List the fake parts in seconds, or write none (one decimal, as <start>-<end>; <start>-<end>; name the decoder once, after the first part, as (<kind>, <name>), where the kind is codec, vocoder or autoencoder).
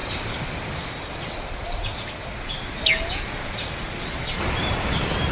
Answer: none